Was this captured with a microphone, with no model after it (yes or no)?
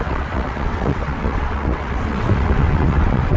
no